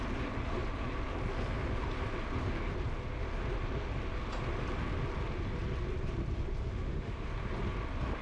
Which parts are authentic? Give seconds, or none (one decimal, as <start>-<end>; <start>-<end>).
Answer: 0.0-6.7; 7.3-8.2